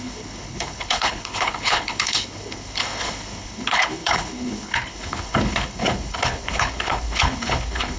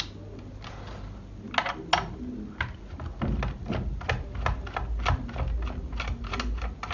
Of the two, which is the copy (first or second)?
first